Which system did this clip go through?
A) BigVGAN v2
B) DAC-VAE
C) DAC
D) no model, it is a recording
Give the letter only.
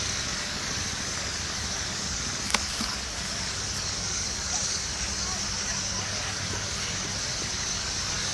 C